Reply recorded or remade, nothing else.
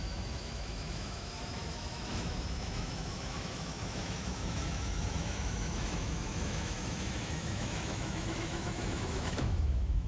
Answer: remade